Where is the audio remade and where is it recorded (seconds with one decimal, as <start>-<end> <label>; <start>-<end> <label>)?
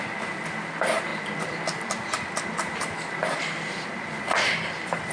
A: 0.0-5.1 recorded